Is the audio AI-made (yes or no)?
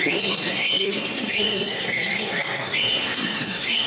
yes